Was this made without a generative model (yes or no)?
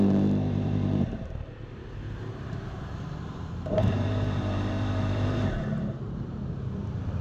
no